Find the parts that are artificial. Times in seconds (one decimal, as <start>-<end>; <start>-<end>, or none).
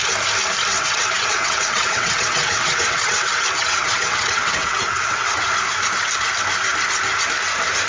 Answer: 0.7-5.4